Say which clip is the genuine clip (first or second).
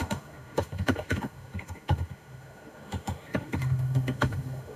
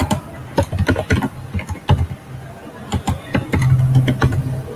second